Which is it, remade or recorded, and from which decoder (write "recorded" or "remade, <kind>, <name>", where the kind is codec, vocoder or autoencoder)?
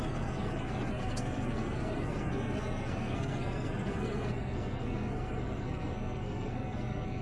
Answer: remade, codec, SNAC